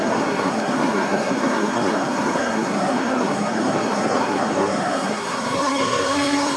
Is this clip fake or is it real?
fake